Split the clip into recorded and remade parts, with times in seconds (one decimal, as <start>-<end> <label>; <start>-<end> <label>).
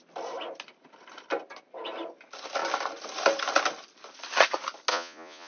0.0-4.9 recorded; 4.9-5.5 remade